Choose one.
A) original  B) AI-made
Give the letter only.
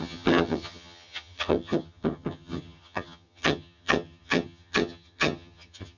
B